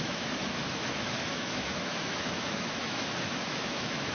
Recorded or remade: remade